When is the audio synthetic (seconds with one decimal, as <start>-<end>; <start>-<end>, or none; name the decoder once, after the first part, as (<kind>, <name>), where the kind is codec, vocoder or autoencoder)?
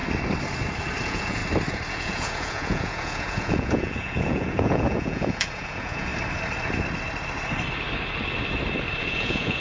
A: 1.0-1.4 (vocoder, Vocos); 1.9-6.1; 9.0-9.6